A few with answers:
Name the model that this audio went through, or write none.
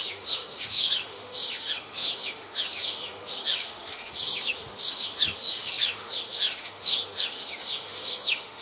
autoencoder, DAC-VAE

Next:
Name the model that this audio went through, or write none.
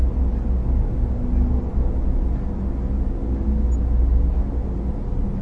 none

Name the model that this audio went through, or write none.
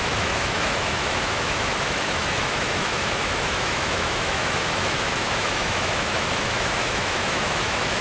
autoencoder, DAC-VAE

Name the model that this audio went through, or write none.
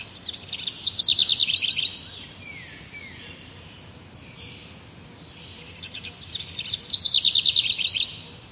none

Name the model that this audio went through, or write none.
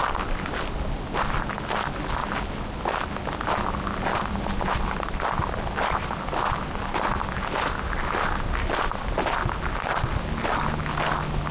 none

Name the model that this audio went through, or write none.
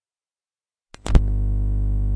none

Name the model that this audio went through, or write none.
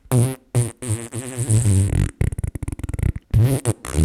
none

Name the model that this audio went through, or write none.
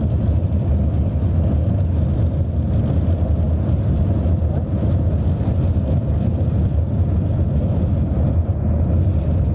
none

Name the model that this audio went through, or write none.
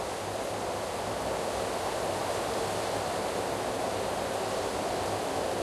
none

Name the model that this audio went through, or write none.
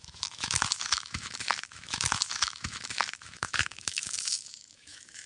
autoencoder, DAC-VAE